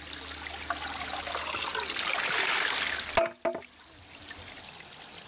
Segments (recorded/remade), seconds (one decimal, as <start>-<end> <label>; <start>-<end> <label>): 0.0-5.3 recorded